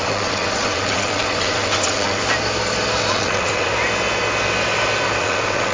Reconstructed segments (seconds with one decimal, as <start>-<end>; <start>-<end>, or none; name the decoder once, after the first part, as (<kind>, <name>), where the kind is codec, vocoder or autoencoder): 0.0-2.2 (vocoder, WaveNeXt); 3.1-3.7; 5.2-5.7